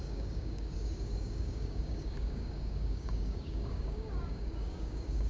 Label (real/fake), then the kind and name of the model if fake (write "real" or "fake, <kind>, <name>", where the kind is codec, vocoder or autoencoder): fake, codec, DAC